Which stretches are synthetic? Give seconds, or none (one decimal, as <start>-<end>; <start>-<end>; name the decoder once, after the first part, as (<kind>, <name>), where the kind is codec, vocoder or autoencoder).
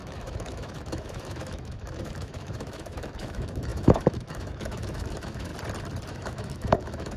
0.0-5.5 (autoencoder, DAC-VAE); 6.1-7.2